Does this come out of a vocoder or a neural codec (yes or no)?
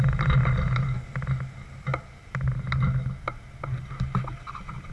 no